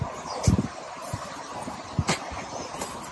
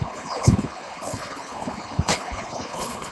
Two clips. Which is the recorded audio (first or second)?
first